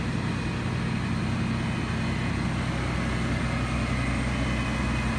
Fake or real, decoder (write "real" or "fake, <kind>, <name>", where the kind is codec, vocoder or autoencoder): real